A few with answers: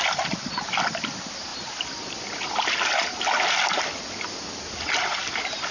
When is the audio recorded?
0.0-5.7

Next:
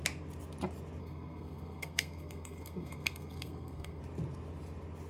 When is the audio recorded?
0.0-1.0; 4.0-5.1

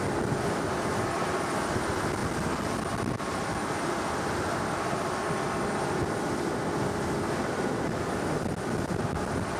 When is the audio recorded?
0.0-9.6

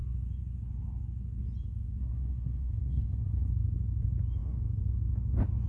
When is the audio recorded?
0.0-2.0; 3.5-5.7

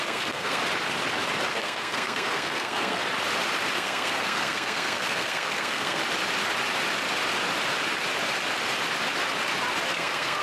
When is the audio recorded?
0.6-1.5; 3.0-3.7; 6.0-9.9